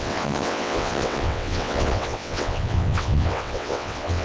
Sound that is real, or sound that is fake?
fake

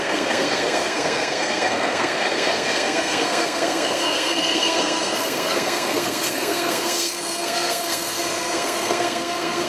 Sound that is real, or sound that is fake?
fake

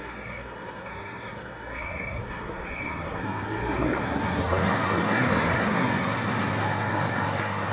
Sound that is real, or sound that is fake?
fake